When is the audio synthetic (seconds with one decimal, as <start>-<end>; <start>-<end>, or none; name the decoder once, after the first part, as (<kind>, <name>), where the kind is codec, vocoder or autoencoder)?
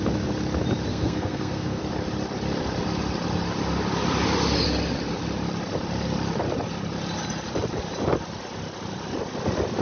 0.9-1.8 (codec, SNAC)